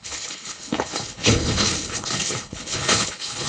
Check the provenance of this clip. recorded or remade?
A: remade